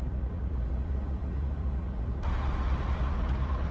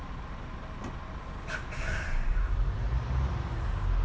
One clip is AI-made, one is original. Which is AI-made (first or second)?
first